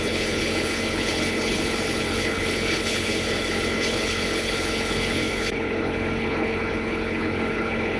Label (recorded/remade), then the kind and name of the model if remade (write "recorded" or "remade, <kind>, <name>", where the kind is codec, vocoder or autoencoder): remade, codec, HILCodec